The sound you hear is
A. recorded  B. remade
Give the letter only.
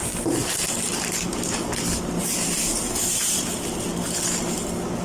A